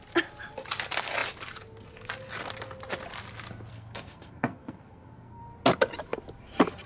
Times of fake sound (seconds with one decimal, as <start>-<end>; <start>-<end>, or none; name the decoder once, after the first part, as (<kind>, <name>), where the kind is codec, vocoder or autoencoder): 3.7-5.4 (codec, SNAC)